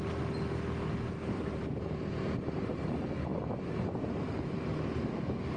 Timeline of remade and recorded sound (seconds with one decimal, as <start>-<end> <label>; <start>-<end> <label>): 0.0-5.6 recorded